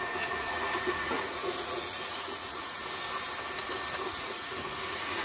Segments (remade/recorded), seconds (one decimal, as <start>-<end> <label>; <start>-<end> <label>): 0.0-2.8 remade; 2.8-4.1 recorded; 4.1-5.2 remade